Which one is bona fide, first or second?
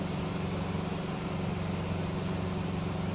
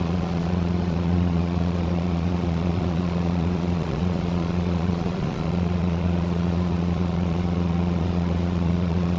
first